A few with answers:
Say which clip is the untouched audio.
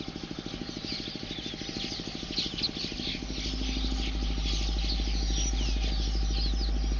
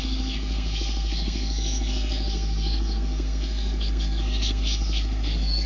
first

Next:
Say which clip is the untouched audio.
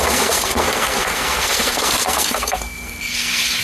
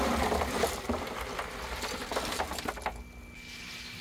second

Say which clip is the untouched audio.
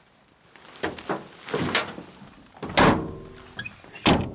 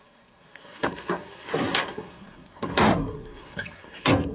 first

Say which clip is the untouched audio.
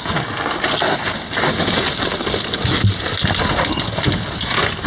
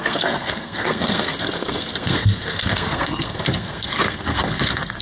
first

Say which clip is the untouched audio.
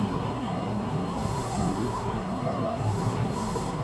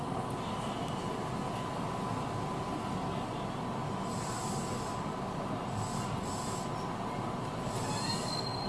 second